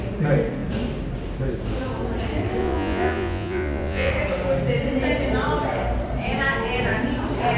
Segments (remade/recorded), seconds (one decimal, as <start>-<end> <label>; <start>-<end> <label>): 0.0-2.6 recorded; 2.6-4.1 remade; 4.1-7.6 recorded